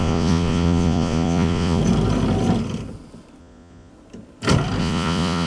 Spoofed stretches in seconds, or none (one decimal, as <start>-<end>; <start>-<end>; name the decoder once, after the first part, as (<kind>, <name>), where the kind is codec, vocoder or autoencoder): 0.0-1.8 (vocoder, Vocos); 3.4-3.9; 4.8-5.5